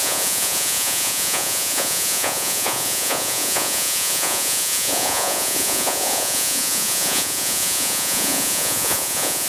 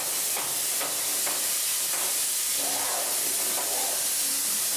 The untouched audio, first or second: second